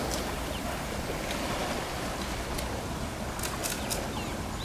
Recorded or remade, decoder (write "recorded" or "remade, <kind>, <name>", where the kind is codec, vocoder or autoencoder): recorded